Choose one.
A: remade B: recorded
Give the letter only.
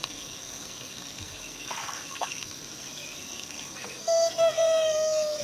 A